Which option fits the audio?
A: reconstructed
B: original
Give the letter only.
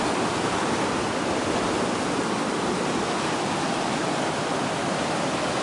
B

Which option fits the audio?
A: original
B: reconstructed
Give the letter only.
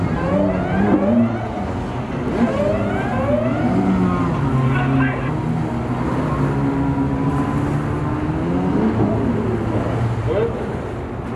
A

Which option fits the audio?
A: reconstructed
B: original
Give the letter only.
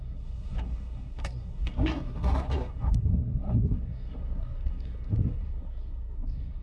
A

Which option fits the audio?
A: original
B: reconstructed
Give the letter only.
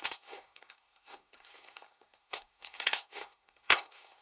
B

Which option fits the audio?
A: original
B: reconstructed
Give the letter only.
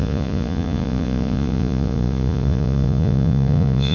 B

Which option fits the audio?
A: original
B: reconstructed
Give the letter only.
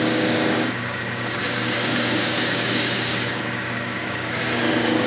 B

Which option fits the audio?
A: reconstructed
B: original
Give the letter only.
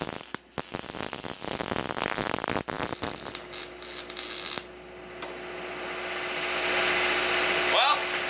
B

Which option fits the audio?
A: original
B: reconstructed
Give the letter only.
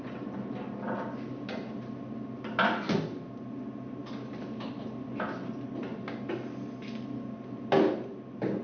A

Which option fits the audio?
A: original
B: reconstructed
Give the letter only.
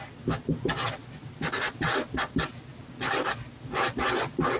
A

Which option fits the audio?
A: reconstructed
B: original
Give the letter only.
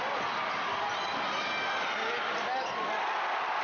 B